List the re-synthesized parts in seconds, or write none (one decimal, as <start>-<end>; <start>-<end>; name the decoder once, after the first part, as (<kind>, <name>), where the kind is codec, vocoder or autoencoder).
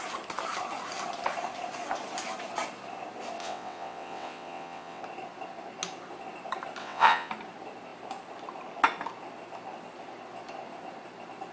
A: 3.4-5.0 (vocoder, WaveNeXt); 6.8-7.3